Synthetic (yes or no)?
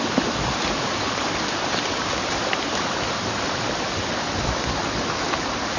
no